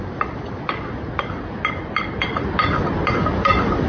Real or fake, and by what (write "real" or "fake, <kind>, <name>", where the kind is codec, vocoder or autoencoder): real